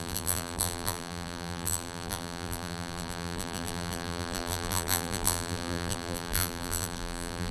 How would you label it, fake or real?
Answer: fake